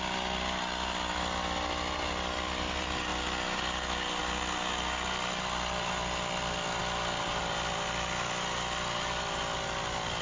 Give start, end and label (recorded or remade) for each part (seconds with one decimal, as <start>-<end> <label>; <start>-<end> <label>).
0.0-10.2 recorded